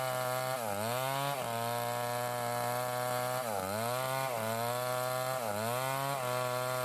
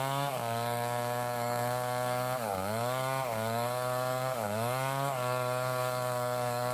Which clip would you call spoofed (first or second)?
second